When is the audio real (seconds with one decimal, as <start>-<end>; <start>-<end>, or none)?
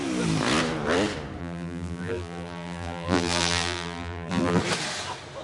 0.0-1.4; 4.6-5.4